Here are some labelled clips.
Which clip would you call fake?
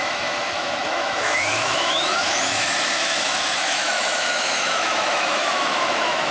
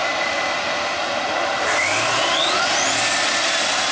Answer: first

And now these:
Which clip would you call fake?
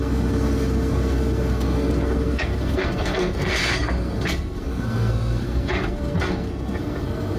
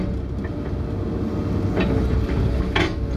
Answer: first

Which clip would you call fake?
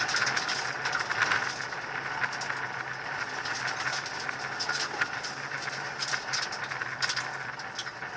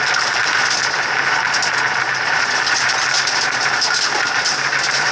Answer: second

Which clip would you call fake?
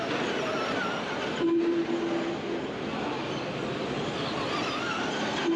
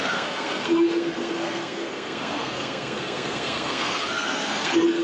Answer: second